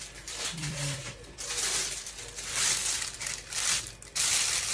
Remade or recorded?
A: remade